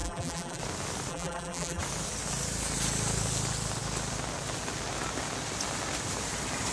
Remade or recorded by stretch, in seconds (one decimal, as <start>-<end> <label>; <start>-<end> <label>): 0.0-0.6 remade; 0.6-1.1 recorded; 1.1-1.8 remade; 1.8-6.7 recorded